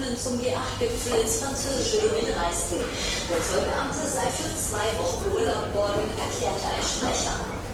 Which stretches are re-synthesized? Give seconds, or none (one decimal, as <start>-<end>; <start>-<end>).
4.5-5.2